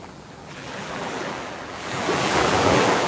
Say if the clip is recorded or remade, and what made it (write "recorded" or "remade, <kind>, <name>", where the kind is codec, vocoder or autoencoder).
remade, vocoder, BigVGAN v2